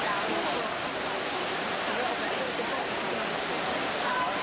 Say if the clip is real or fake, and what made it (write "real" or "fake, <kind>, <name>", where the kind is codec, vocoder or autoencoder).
real